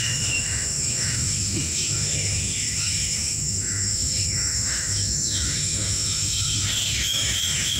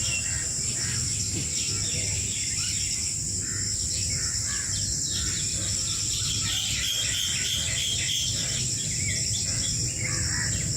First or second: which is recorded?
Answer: second